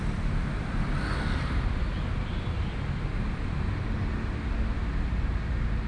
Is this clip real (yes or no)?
yes